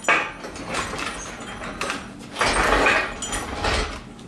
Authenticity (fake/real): real